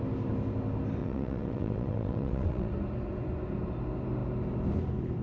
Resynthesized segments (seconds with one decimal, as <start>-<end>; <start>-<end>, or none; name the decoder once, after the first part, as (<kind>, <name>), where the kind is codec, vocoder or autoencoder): 1.0-2.7 (vocoder, WaveNeXt)